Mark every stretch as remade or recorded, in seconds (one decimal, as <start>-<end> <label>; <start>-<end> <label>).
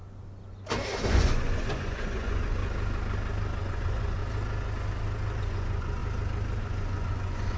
0.0-1.1 recorded; 1.1-2.6 remade; 2.6-3.6 recorded; 3.6-4.2 remade; 4.2-5.4 recorded; 5.4-6.0 remade; 6.0-6.6 recorded; 6.6-7.6 remade